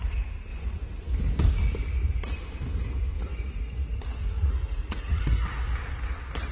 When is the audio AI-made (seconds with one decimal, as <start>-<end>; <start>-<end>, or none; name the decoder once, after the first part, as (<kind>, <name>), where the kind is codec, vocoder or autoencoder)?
3.3-5.2 (vocoder, Vocos)